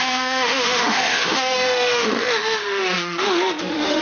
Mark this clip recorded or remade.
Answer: remade